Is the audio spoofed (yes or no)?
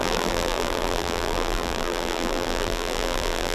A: yes